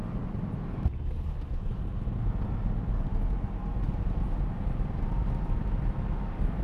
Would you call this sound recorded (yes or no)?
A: yes